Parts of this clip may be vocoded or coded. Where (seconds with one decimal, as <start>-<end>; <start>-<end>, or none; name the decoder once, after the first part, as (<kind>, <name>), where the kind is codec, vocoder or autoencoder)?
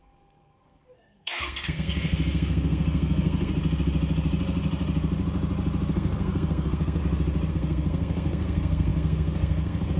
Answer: 0.0-3.6 (codec, SNAC); 5.9-7.0; 7.5-10.0